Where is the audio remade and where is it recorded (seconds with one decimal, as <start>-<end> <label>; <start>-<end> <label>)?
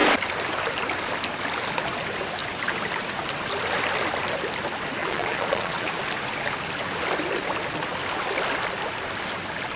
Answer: 0.0-5.0 recorded; 5.0-5.9 remade; 5.9-9.8 recorded